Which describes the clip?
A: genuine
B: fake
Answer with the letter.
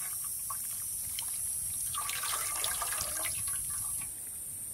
A